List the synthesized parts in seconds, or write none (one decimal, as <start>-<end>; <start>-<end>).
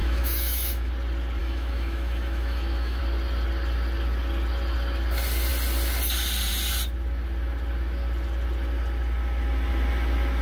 0.0-0.9; 1.4-3.0